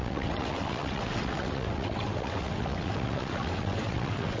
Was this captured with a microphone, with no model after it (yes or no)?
no